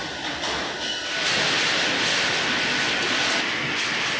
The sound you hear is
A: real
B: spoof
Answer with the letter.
A